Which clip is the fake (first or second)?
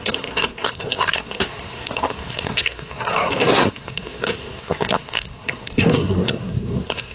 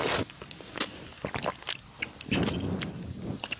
first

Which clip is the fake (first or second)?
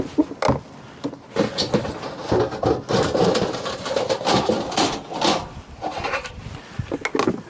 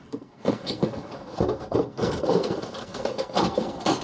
second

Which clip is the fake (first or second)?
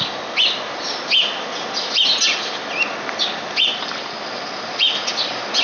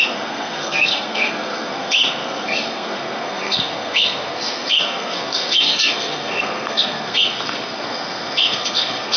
second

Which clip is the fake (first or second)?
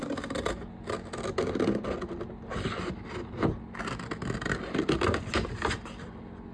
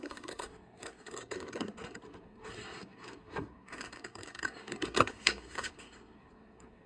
second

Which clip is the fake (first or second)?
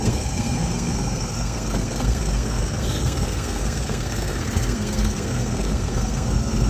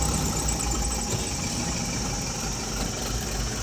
first